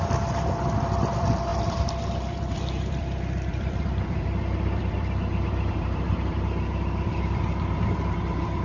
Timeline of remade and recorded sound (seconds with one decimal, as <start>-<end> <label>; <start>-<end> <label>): 0.0-8.6 remade